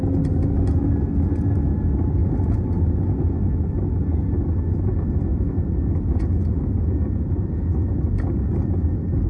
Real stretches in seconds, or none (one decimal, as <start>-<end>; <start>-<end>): 0.0-9.3